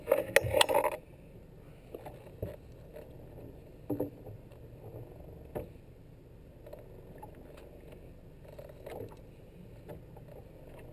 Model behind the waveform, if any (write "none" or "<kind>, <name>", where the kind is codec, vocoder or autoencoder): none